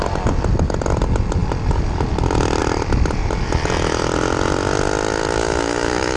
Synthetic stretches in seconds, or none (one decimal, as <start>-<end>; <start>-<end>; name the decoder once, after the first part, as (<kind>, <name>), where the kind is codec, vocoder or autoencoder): 5.4-6.2 (autoencoder, DAC-VAE)